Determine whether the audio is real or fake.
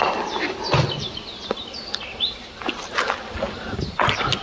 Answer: real